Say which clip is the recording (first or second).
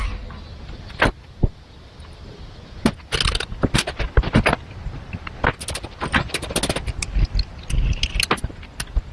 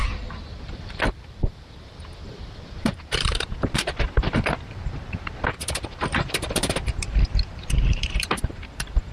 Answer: first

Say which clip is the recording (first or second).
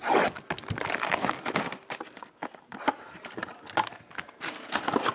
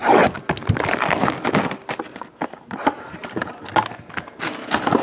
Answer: second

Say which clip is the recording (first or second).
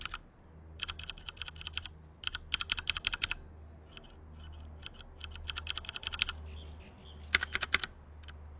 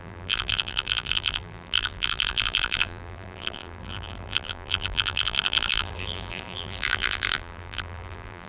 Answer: first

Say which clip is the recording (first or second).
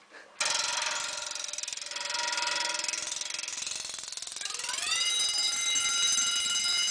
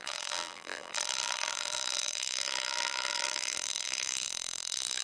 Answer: first